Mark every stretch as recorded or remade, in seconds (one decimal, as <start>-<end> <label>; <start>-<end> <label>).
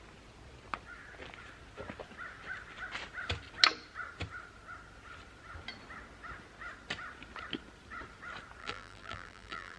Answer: 0.0-8.6 recorded; 8.6-9.8 remade